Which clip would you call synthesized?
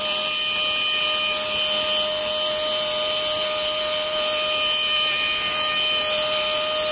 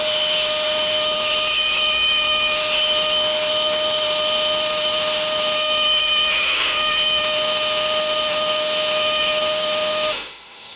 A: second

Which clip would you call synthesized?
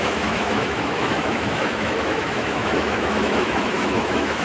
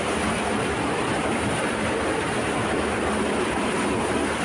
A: first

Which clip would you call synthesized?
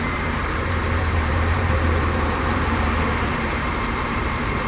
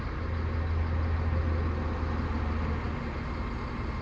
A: first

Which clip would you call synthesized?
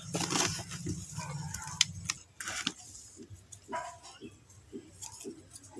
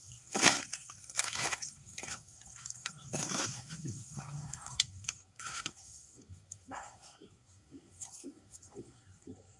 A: second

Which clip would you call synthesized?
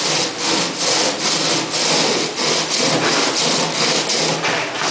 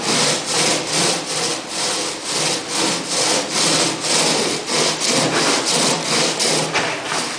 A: second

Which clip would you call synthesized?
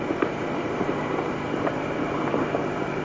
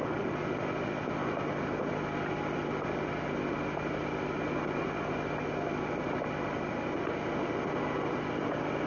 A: first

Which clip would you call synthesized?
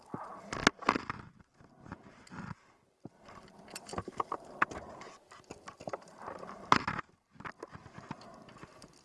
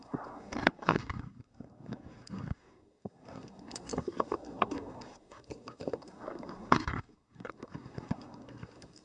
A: second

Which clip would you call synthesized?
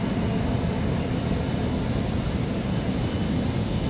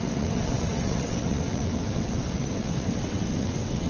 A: second